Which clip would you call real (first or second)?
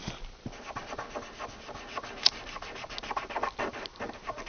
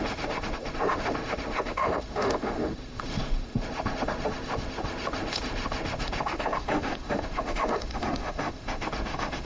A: first